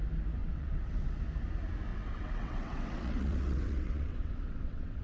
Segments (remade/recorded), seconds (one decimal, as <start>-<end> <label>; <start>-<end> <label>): 0.0-0.4 recorded; 0.4-1.2 remade; 1.2-1.9 recorded; 1.9-5.0 remade